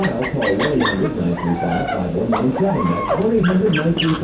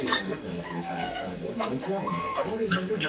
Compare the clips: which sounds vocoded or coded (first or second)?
second